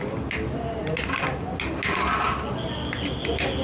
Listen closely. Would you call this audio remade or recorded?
recorded